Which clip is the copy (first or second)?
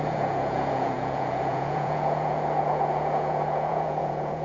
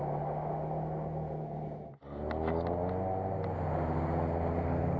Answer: first